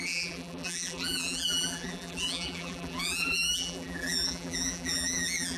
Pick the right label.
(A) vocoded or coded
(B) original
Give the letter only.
A